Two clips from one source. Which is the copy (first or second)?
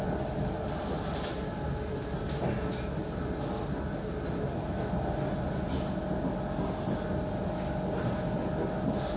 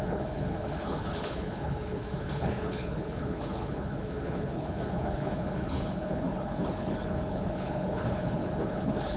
second